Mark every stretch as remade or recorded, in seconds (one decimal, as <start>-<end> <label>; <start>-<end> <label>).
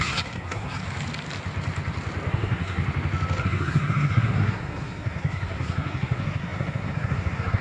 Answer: 0.0-0.8 remade; 0.8-2.3 recorded; 2.3-2.8 remade; 2.8-3.4 recorded; 3.4-7.6 remade